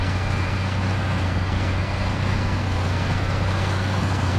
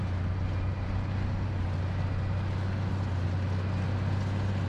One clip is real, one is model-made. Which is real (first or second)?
second